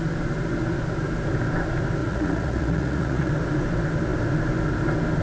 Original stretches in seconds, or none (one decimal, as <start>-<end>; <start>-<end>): 0.0-2.0; 3.3-5.2